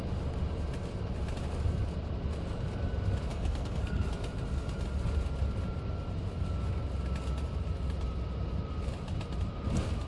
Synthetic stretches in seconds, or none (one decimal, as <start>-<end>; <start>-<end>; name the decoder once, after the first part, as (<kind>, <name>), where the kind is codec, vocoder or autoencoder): 3.3-4.1 (codec, SNAC)